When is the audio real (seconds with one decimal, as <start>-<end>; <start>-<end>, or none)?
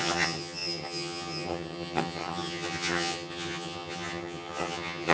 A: none